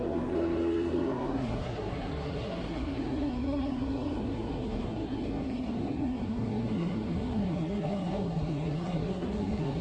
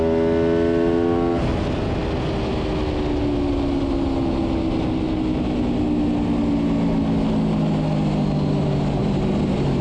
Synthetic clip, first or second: first